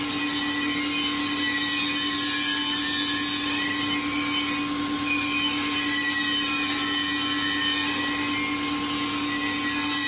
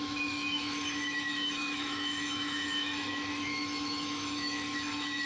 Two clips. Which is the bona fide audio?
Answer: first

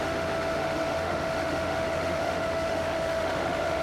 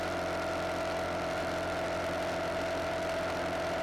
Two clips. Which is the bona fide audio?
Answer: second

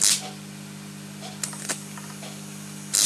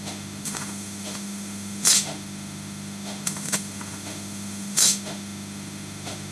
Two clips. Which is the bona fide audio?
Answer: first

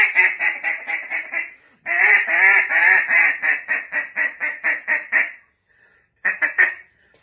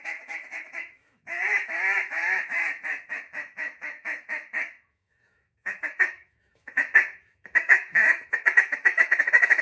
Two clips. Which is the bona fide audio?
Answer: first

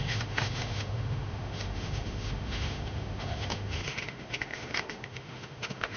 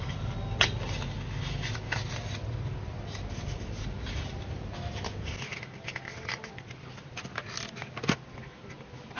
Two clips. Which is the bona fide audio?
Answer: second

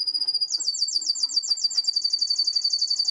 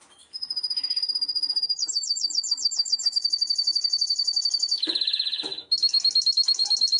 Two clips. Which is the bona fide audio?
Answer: first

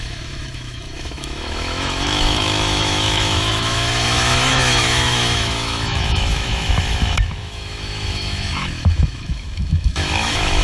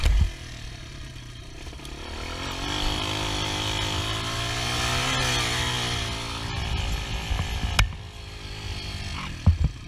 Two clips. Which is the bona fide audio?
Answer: second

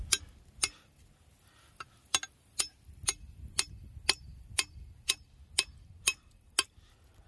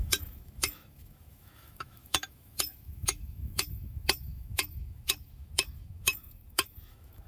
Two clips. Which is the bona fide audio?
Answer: first